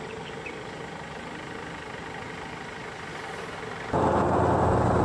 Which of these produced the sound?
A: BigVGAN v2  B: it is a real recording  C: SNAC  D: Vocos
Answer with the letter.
B